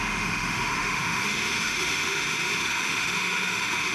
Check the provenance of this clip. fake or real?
fake